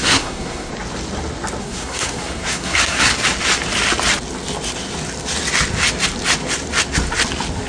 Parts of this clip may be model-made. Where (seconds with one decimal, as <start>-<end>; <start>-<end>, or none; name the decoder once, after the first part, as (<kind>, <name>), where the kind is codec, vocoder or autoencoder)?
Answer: 0.0-0.7 (codec, SNAC); 1.6-3.1